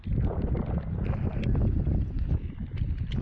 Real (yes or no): yes